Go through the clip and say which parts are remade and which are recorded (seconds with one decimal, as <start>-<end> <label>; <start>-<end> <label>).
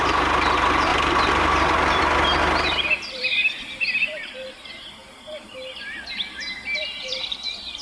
0.0-5.0 remade; 5.0-7.0 recorded; 7.0-7.8 remade